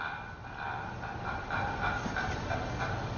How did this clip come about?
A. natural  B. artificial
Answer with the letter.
A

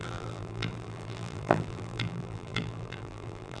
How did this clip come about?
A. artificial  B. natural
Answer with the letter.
A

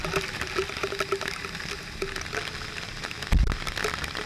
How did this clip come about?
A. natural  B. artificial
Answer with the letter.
A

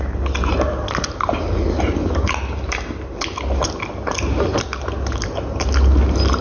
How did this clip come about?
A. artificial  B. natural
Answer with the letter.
B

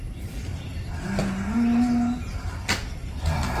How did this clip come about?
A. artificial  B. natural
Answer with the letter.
B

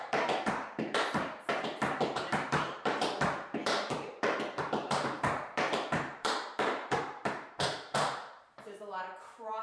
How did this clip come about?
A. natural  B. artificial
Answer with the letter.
B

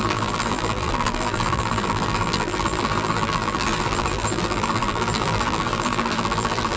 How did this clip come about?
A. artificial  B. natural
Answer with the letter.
A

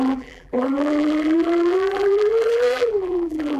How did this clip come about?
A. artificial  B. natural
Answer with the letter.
A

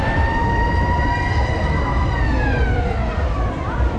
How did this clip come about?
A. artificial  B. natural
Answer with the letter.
A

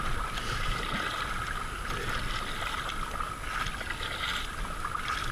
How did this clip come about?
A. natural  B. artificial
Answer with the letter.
A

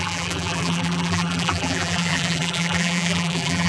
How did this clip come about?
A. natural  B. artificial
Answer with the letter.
B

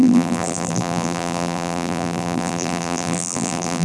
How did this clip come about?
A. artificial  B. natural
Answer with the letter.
A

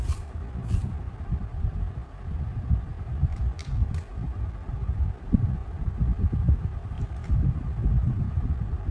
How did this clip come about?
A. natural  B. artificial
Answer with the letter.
B